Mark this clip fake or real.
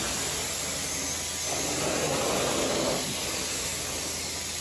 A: real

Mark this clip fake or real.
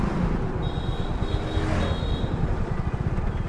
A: real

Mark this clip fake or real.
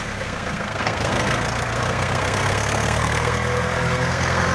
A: fake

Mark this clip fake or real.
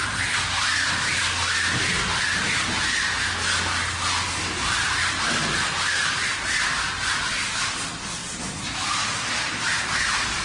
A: real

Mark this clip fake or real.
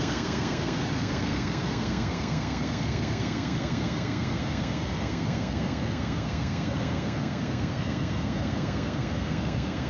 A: fake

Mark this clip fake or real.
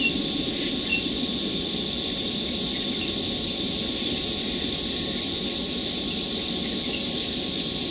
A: real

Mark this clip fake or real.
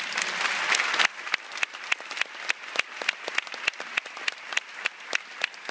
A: real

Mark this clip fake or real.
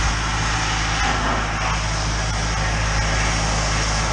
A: real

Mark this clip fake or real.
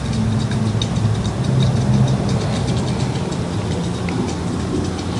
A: real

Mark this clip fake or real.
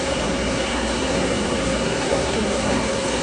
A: fake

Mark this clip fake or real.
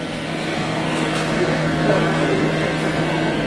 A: fake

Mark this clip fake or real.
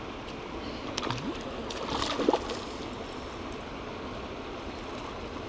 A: real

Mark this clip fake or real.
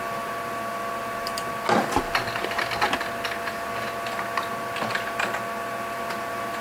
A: real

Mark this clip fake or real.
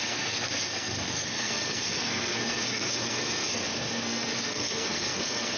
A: fake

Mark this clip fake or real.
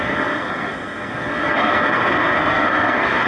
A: fake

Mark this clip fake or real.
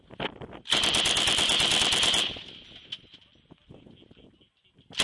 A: real